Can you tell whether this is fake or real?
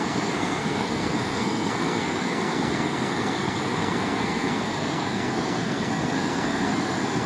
fake